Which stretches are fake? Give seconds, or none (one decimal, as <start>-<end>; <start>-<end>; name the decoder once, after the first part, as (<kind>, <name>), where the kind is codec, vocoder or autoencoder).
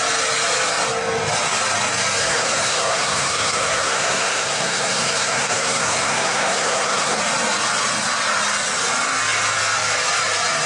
2.2-7.2 (codec, SNAC)